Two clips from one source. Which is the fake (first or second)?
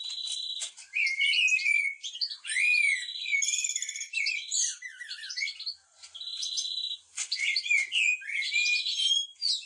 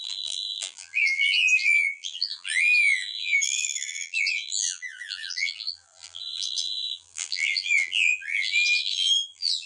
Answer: second